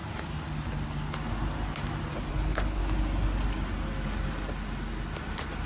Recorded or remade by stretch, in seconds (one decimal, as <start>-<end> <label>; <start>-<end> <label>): 0.0-2.3 recorded; 2.3-2.8 remade; 2.8-5.7 recorded